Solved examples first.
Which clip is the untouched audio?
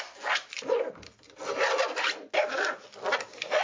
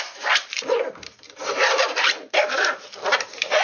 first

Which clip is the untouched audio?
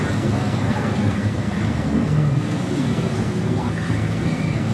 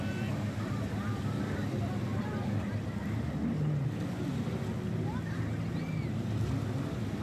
second